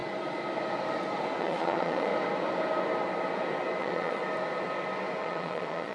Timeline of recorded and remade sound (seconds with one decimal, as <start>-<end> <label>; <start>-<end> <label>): 0.0-1.4 recorded; 1.4-2.1 remade; 2.1-3.8 recorded; 3.8-4.2 remade; 4.2-5.2 recorded; 5.2-5.9 remade